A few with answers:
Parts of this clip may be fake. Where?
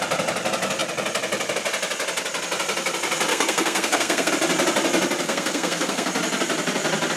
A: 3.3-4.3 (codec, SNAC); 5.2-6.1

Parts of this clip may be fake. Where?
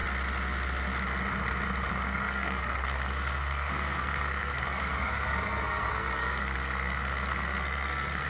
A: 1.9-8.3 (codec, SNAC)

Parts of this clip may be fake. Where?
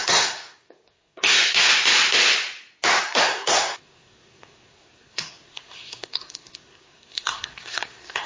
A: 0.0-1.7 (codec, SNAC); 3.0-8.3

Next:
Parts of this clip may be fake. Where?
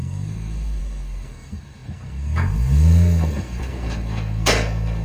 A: 0.0-5.0 (codec, SNAC)